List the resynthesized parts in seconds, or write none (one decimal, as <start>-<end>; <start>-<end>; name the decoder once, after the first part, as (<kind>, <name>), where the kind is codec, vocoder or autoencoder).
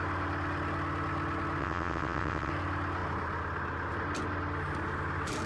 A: 1.6-2.5 (vocoder, WaveNeXt)